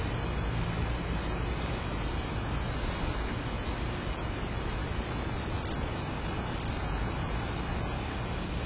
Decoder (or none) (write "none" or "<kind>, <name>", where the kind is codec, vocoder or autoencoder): none